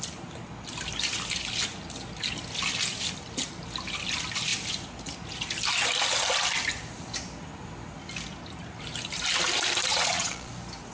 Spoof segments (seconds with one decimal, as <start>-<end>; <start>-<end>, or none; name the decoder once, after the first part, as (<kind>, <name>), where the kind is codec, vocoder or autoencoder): 9.9-10.5 (vocoder, Vocos)